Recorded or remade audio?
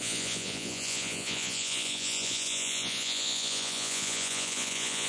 remade